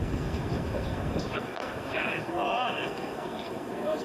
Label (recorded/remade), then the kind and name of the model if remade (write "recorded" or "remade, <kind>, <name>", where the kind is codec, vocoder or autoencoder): remade, codec, SNAC